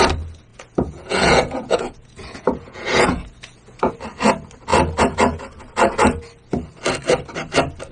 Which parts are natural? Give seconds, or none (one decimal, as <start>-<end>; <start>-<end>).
0.0-0.5; 3.9-7.9